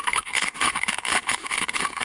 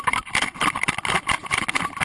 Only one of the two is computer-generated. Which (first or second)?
first